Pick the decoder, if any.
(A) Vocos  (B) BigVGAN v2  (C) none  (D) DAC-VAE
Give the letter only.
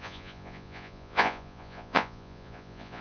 A